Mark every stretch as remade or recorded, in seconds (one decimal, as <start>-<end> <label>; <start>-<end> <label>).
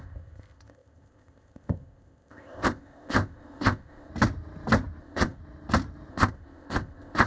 0.0-4.1 remade; 4.1-5.0 recorded; 5.0-5.4 remade; 5.4-6.1 recorded; 6.1-7.3 remade